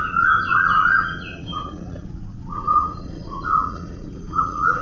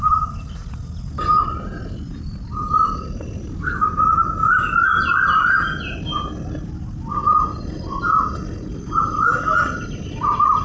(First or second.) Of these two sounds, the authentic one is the second